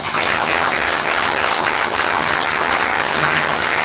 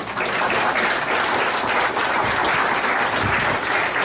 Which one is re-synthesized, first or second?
first